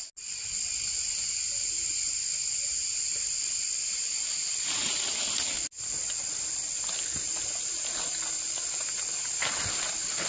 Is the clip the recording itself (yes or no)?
yes